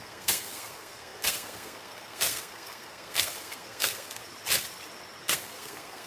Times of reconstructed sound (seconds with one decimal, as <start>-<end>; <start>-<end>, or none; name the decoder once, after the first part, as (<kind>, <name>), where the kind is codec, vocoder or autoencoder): 0.0-4.2 (codec, SNAC); 5.2-6.1